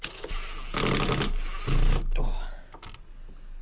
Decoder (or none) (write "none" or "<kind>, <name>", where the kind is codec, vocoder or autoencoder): none